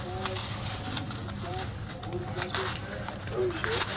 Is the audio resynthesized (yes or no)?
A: no